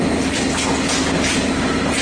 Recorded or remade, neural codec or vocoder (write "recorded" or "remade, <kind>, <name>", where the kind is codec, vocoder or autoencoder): recorded